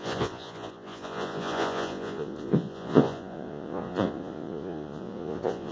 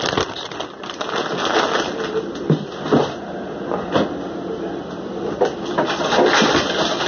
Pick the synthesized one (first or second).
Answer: first